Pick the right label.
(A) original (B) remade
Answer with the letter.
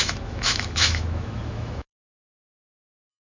B